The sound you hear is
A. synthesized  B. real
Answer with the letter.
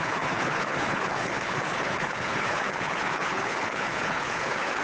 A